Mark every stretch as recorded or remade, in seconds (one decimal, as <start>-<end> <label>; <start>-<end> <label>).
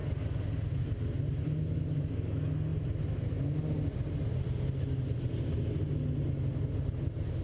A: 0.0-7.4 recorded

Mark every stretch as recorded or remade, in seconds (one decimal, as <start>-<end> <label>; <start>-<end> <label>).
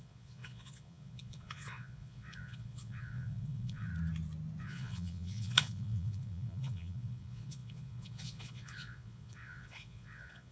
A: 0.0-3.9 remade; 3.9-4.6 recorded; 4.6-10.5 remade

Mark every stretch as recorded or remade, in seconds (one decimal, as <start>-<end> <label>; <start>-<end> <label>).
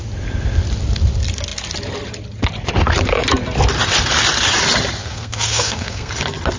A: 0.0-5.0 recorded; 5.0-6.1 remade; 6.1-6.6 recorded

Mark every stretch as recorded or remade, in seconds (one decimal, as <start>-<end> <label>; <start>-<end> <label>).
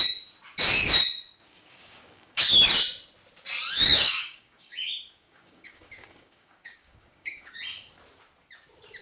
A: 0.0-1.4 recorded; 1.4-2.4 remade; 2.4-3.9 recorded; 3.9-7.5 remade; 7.5-9.0 recorded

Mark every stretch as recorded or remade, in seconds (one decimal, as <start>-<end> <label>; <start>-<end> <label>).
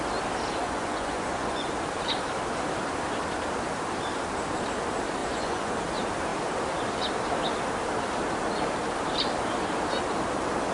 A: 0.0-0.6 recorded; 0.6-1.7 remade; 1.7-5.2 recorded; 5.2-5.7 remade; 5.7-10.7 recorded